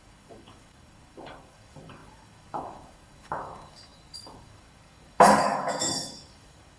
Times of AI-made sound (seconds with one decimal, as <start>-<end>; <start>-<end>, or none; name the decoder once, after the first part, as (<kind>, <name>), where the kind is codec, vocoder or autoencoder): 0.0-6.8 (codec, DAC)

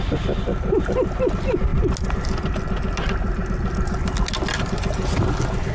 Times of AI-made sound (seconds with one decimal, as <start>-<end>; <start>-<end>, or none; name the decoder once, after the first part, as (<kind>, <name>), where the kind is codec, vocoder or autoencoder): none

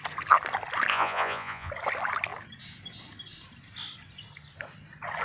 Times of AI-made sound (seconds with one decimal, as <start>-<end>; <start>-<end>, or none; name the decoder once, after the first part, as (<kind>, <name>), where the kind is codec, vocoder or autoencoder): 0.9-1.7 (vocoder, Vocos)

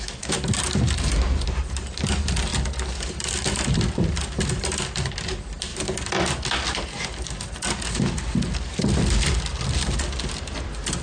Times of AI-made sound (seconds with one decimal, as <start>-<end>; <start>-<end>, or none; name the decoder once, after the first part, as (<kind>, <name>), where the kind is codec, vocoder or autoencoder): none

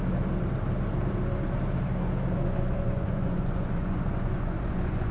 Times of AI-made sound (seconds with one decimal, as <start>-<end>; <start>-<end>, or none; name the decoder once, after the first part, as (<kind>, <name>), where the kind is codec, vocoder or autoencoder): 2.4-5.1 (vocoder, Vocos)